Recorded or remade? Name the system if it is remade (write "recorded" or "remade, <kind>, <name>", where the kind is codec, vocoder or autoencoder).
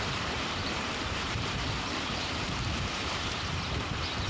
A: remade, vocoder, BigVGAN v2